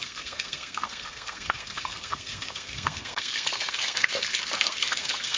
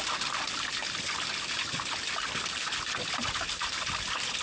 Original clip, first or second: second